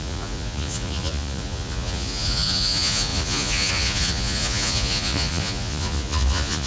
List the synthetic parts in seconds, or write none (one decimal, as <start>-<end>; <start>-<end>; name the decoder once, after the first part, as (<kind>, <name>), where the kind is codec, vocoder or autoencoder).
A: 0.0-6.7 (vocoder, Vocos)